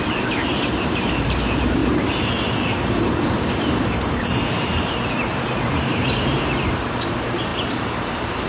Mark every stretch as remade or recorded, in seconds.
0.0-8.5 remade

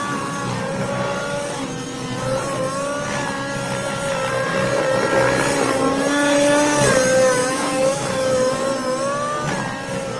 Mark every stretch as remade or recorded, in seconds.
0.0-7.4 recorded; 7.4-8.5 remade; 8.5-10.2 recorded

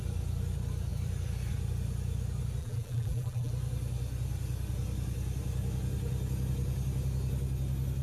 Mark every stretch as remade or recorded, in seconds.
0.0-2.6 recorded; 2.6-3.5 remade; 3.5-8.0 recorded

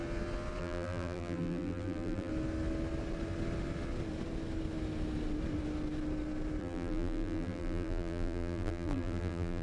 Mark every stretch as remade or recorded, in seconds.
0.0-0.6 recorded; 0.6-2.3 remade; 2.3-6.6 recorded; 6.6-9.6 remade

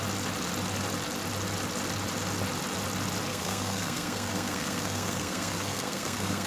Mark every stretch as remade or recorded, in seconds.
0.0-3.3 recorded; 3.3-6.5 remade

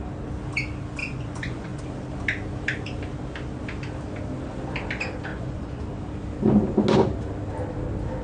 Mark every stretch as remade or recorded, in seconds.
0.0-1.0 recorded; 1.0-1.8 remade; 1.8-5.3 recorded; 5.3-5.8 remade; 5.8-8.2 recorded

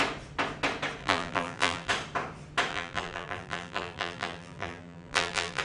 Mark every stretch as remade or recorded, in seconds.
0.0-1.0 recorded; 1.0-1.9 remade; 1.9-2.7 recorded; 2.7-5.6 remade

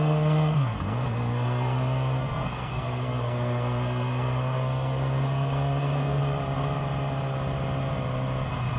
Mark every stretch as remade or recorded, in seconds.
0.0-6.2 remade; 6.2-8.8 recorded